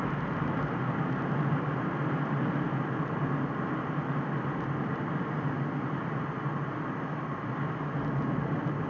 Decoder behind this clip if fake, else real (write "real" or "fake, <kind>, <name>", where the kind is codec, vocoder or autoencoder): real